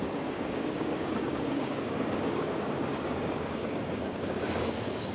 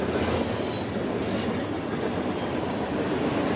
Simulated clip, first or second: first